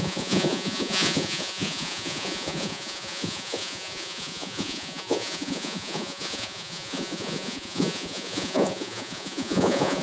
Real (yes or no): no